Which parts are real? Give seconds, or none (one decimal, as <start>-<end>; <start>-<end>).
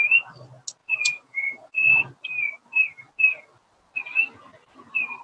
0.0-0.8; 2.1-5.2